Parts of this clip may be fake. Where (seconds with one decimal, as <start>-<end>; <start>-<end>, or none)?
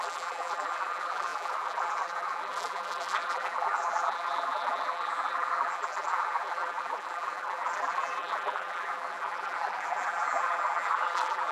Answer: 0.0-11.5